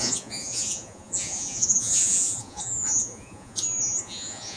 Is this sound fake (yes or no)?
yes